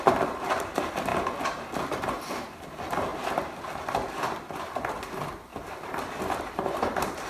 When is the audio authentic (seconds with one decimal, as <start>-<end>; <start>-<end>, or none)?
1.1-2.3; 3.1-4.4; 5.5-6.0